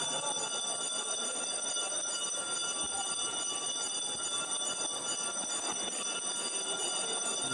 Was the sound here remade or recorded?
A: recorded